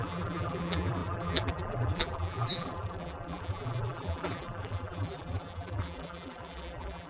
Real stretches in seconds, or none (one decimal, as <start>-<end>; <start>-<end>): none